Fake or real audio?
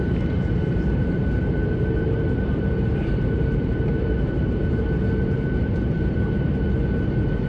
fake